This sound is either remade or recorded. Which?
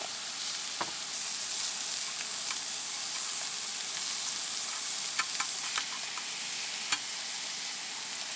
recorded